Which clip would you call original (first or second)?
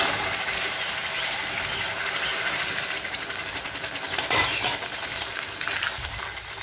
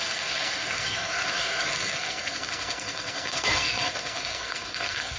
first